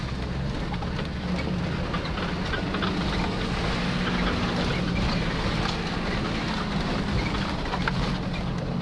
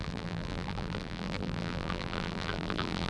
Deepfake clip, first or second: second